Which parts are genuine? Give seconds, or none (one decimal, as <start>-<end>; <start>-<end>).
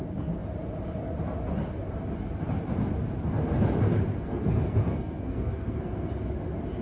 0.0-4.1; 6.1-6.8